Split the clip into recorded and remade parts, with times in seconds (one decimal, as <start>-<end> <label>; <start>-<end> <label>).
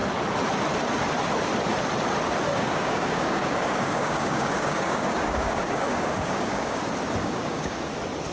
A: 0.0-2.5 recorded; 2.5-6.8 remade; 6.8-7.2 recorded; 7.2-7.8 remade; 7.8-8.3 recorded